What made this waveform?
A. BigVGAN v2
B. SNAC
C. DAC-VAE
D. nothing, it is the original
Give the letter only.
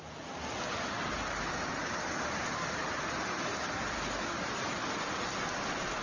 D